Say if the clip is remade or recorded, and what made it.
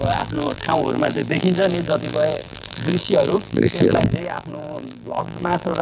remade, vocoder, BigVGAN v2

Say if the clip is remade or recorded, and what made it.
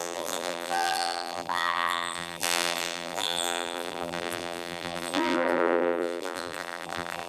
remade, vocoder, BigVGAN v2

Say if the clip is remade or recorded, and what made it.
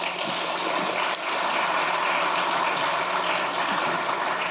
recorded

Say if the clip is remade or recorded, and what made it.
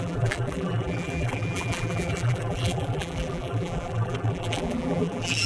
remade, vocoder, BigVGAN v2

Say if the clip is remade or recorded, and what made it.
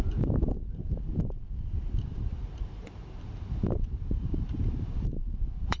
remade, vocoder, BigVGAN v2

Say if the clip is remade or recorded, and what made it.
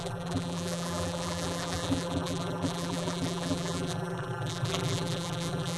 remade, vocoder, BigVGAN v2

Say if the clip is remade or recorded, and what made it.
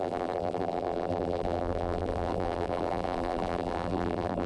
remade, vocoder, BigVGAN v2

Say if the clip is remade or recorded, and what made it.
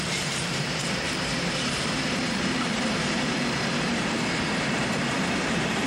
remade, vocoder, BigVGAN v2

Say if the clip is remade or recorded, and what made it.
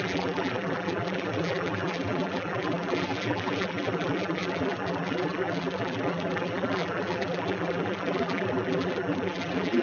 remade, vocoder, BigVGAN v2